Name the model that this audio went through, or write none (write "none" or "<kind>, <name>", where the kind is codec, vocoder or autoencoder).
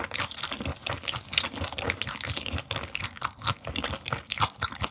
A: none